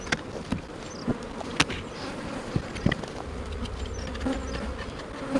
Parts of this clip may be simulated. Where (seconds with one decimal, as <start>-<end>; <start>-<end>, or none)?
none